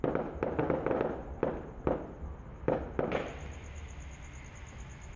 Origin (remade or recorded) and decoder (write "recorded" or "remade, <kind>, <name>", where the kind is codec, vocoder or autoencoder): recorded